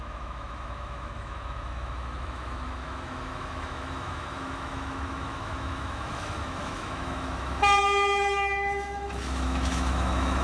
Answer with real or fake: fake